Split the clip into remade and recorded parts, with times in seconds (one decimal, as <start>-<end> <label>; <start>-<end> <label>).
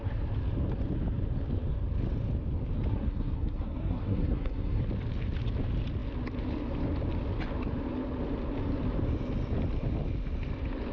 0.0-2.9 recorded; 2.9-4.8 remade; 4.8-10.9 recorded